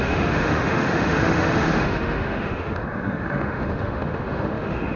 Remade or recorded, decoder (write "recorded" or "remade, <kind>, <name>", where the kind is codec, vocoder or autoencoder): remade, autoencoder, DAC-VAE